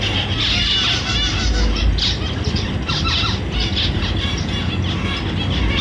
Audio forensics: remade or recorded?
recorded